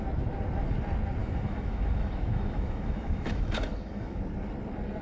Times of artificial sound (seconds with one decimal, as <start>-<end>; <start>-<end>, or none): 1.2-4.2